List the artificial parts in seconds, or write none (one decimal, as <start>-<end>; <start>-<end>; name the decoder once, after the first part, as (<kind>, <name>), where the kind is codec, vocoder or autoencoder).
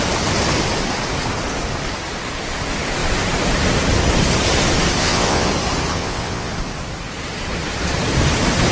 5.0-5.5 (vocoder, WaveNeXt); 5.9-6.5